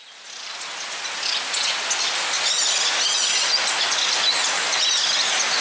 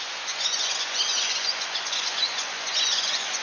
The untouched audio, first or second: first